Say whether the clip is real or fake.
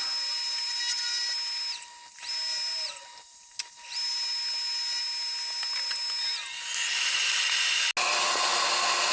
real